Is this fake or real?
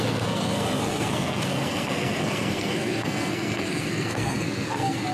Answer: fake